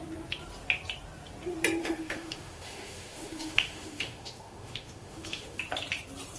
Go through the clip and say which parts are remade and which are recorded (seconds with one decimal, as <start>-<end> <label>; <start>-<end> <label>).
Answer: 0.0-1.8 recorded; 1.8-5.6 remade; 5.6-6.4 recorded